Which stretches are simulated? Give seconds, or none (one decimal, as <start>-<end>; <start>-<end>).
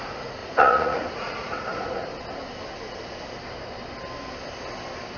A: 0.0-2.1